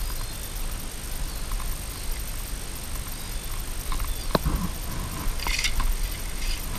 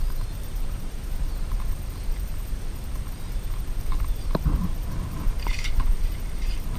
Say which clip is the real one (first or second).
first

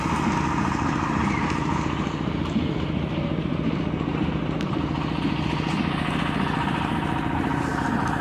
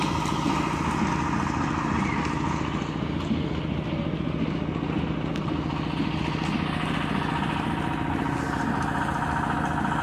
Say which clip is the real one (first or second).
second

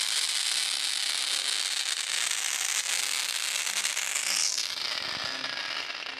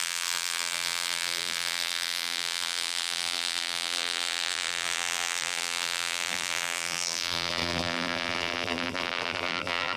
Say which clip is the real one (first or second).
first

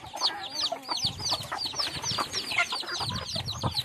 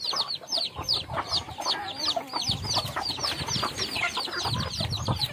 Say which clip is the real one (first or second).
first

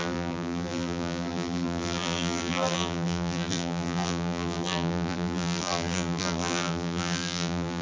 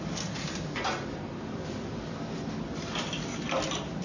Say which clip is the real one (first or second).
second